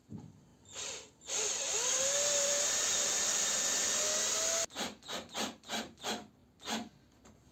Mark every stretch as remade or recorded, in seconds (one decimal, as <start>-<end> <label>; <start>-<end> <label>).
0.0-7.5 remade